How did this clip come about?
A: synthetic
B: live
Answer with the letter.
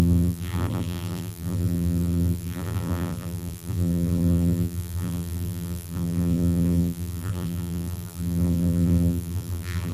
A